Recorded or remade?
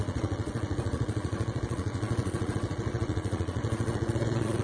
remade